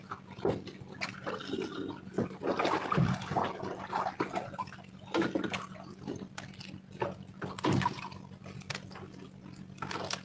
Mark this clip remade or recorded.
recorded